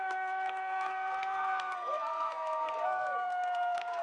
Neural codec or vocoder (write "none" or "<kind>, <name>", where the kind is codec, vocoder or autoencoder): codec, SNAC